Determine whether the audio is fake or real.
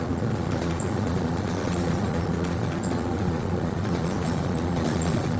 fake